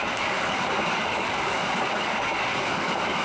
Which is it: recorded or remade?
remade